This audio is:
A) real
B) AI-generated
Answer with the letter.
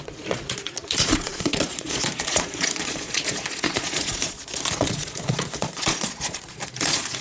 B